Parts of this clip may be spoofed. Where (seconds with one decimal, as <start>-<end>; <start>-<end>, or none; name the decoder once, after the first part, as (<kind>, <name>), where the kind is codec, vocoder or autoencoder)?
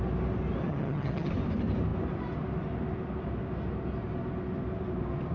0.6-1.3 (vocoder, HiFi-GAN)